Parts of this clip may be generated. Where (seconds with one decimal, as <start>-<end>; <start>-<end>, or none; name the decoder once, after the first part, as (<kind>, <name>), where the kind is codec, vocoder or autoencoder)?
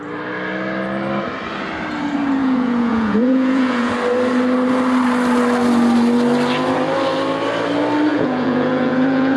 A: 2.4-3.9 (vocoder, Vocos); 8.1-9.4